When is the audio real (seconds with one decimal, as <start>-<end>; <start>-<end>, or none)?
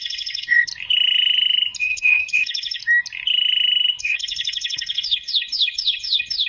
0.7-1.8; 2.8-4.0